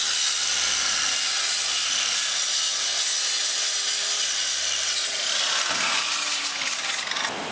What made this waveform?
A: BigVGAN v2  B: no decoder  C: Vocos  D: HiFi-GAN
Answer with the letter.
B